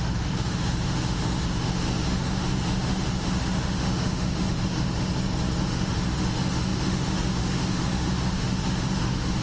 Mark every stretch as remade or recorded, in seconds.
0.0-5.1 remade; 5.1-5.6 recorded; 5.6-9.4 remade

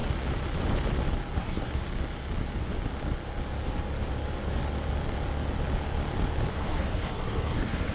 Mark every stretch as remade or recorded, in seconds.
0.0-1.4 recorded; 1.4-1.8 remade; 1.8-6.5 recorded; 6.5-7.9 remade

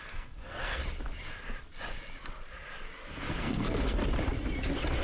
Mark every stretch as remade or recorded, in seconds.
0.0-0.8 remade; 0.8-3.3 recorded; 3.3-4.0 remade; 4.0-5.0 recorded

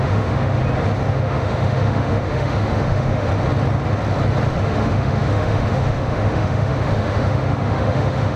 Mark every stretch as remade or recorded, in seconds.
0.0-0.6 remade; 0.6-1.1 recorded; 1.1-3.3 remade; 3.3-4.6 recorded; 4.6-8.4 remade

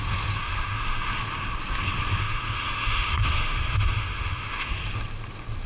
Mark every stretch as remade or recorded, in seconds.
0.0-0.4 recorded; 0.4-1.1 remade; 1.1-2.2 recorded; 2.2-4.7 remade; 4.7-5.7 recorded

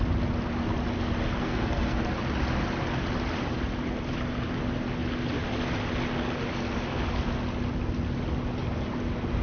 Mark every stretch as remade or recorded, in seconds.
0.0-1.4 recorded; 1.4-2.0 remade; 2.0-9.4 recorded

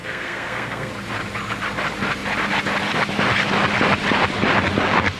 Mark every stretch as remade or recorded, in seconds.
0.0-0.9 remade; 0.9-5.2 recorded

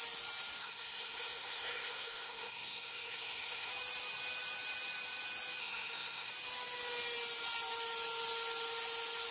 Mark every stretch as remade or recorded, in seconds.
0.0-0.6 recorded; 0.6-3.7 remade; 3.7-5.6 recorded; 5.6-6.3 remade; 6.3-9.3 recorded